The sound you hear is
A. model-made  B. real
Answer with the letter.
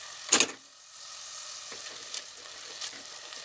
B